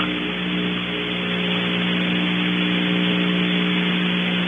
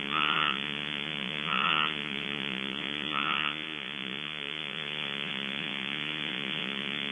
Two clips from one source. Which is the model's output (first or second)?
second